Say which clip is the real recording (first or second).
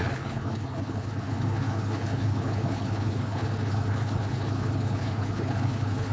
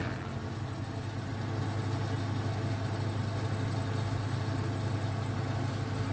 second